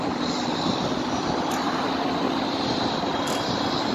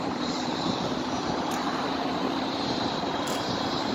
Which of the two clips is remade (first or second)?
second